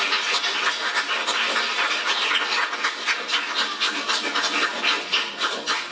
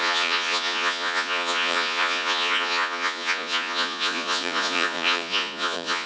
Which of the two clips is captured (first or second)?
first